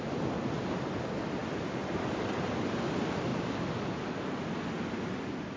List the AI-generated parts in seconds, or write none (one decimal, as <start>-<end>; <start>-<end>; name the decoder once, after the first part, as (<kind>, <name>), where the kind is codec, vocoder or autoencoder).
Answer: none